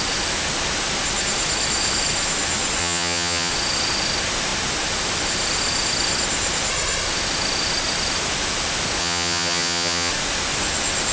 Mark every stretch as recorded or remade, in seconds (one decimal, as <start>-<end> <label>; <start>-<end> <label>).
0.0-2.8 recorded; 2.8-3.5 remade; 3.5-9.0 recorded; 9.0-10.1 remade; 10.1-11.1 recorded